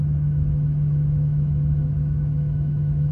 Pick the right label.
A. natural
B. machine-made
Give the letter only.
B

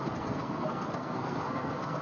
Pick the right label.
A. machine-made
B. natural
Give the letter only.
A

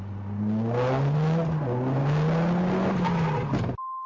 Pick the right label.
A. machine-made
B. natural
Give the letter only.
B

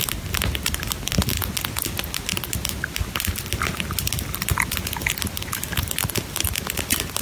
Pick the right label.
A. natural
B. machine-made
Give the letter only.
A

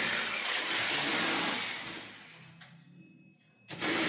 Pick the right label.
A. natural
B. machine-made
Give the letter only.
A